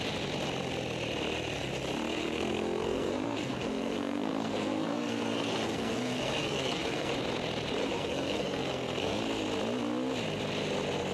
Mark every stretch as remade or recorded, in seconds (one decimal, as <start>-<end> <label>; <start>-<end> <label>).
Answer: 0.0-2.1 recorded; 2.1-7.1 remade; 7.1-7.8 recorded; 7.8-9.2 remade; 9.2-11.1 recorded